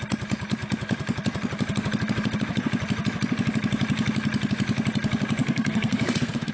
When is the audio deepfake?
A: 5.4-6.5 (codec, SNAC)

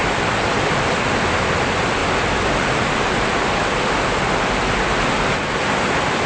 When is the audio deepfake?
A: none